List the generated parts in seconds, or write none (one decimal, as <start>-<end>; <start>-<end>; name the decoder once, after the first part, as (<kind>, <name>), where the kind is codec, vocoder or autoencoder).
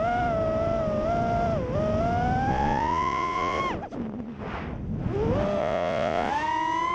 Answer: 2.5-3.6 (vocoder, Vocos); 5.6-6.3